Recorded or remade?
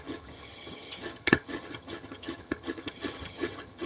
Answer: remade